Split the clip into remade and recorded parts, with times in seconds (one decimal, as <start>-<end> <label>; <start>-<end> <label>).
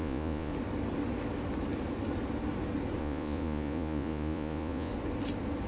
0.0-0.5 remade; 0.5-3.0 recorded; 3.0-4.9 remade; 4.9-5.7 recorded